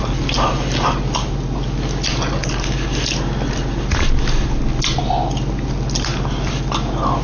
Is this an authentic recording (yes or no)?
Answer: yes